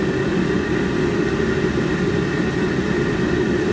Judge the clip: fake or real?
real